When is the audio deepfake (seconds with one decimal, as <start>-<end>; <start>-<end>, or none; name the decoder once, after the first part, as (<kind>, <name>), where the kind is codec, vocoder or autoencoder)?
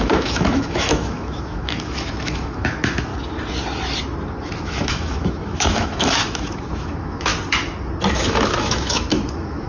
0.0-3.1 (autoencoder, DAC-VAE); 4.4-7.3; 8.1-9.7